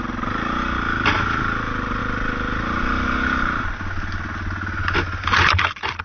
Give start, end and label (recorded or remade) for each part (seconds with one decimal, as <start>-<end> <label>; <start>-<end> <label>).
0.0-6.0 recorded